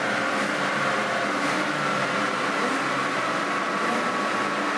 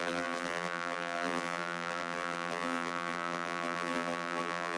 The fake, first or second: second